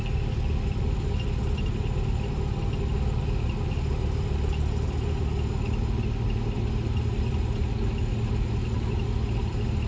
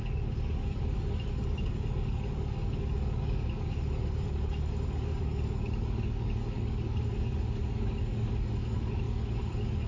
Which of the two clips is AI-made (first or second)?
second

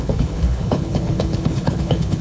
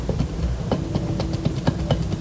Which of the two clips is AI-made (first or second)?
first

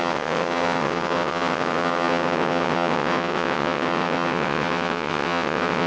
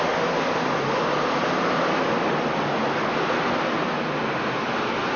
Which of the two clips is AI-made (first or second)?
first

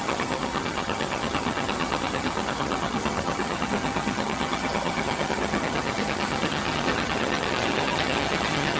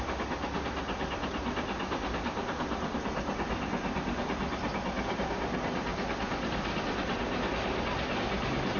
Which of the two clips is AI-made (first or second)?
first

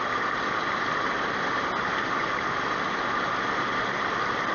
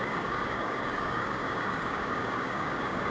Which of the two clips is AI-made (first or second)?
second